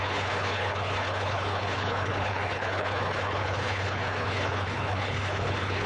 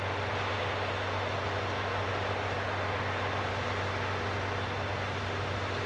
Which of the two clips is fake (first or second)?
first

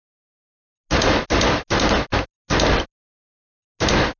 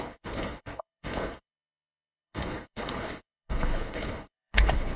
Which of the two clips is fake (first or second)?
second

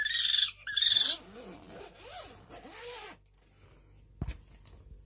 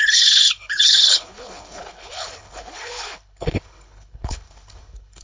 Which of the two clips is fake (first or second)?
second